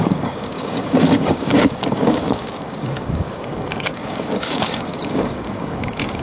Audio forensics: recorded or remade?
remade